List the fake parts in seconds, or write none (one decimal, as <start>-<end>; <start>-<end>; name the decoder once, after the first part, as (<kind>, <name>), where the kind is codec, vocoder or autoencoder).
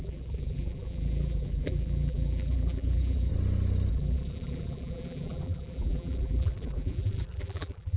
0.0-3.3 (vocoder, BigVGAN v2); 3.9-8.0